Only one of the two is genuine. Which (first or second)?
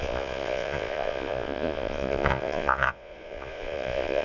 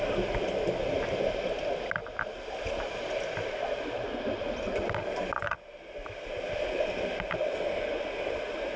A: second